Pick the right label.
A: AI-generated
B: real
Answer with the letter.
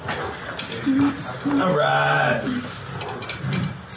B